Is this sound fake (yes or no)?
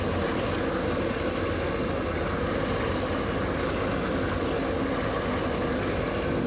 no